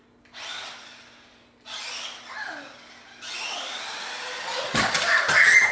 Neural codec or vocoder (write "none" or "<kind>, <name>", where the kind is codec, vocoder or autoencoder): none